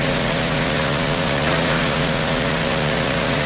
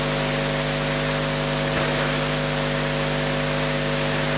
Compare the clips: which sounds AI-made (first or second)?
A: first